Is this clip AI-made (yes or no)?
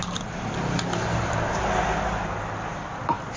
no